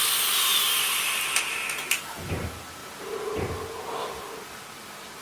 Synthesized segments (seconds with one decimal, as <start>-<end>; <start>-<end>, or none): none